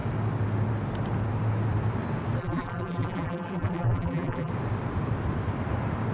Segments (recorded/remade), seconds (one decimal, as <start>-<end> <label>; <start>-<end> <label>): 0.0-2.4 recorded; 2.4-4.5 remade; 4.5-6.1 recorded